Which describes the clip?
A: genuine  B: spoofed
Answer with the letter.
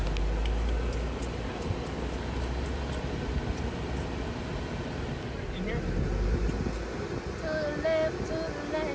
A